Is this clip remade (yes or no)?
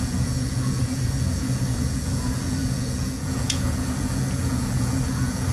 yes